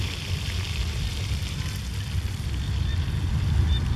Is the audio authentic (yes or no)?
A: yes